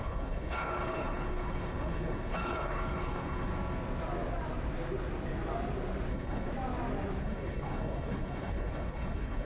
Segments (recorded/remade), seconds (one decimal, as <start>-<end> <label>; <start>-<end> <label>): 0.0-3.5 remade; 3.5-6.1 recorded; 6.1-6.5 remade; 6.5-7.2 recorded; 7.2-9.4 remade